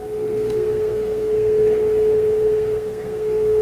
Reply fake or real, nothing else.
fake